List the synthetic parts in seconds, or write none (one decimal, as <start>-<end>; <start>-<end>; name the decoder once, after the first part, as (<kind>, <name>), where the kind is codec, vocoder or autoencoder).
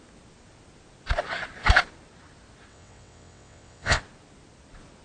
2.7-4.0 (vocoder, WaveNeXt)